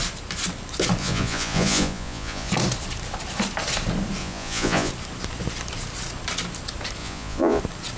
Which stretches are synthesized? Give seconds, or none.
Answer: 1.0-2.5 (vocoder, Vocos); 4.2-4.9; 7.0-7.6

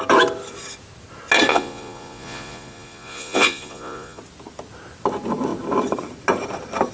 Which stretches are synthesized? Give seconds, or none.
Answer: 1.5-4.2 (vocoder, Vocos)

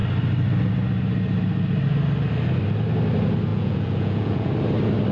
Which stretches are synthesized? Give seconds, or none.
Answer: 3.5-4.5 (vocoder, Vocos)

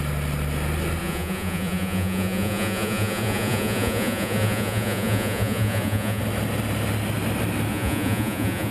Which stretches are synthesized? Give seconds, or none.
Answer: 1.0-6.2 (vocoder, Vocos); 7.7-8.7

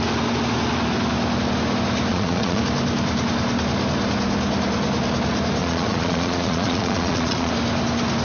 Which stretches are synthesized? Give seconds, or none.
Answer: 2.1-2.6 (vocoder, Vocos); 5.6-7.5

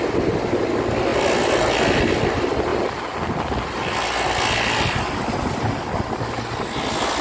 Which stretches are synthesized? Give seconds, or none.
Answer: none